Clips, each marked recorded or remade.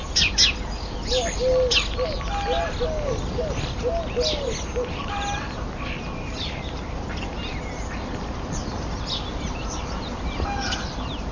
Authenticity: recorded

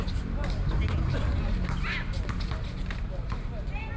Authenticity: recorded